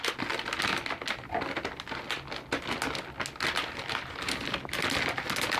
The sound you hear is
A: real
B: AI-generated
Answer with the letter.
A